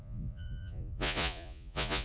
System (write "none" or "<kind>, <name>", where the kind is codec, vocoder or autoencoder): vocoder, Vocos